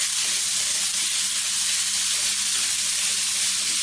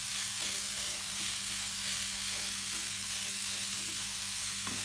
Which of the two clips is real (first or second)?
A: first